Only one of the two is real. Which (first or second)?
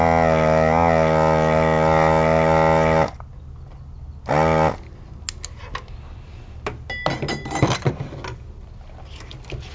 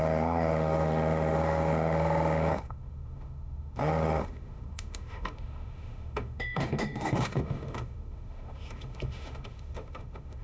first